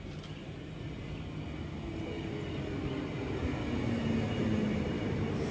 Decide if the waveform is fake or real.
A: real